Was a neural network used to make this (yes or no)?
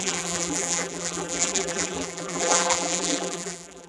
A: yes